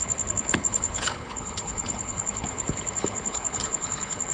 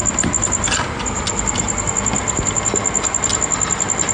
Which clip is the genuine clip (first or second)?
second